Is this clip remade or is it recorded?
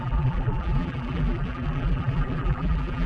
remade